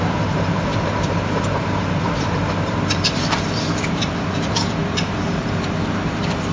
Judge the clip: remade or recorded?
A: remade